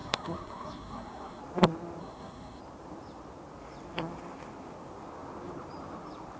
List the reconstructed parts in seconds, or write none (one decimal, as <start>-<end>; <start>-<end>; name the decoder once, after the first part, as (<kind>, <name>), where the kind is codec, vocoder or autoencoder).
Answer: 0.0-1.4 (codec, SNAC); 2.0-2.6